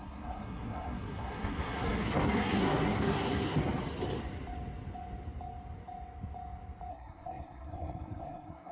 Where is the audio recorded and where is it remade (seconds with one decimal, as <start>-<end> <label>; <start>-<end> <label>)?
0.0-3.6 remade; 3.6-6.9 recorded; 6.9-8.7 remade